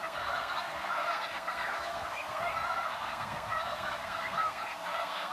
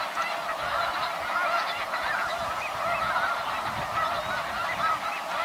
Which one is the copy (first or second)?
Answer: first